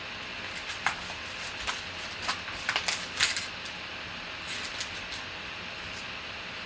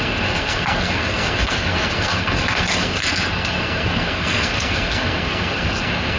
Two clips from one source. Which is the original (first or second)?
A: first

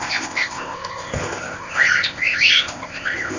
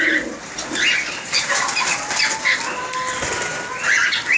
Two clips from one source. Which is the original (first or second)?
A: second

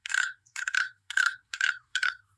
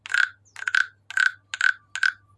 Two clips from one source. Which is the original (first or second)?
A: second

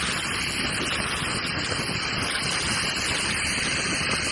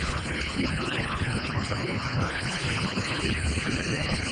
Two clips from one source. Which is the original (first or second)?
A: first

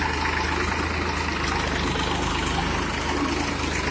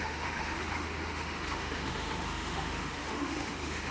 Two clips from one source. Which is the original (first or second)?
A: first